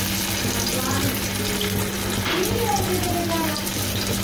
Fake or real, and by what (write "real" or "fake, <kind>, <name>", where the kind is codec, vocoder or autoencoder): real